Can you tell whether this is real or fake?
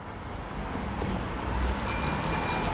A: real